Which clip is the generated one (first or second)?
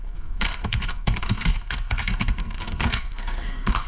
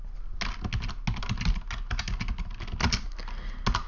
first